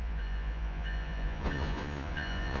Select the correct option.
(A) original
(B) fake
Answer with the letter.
B